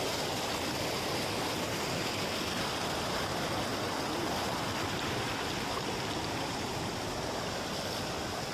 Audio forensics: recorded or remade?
recorded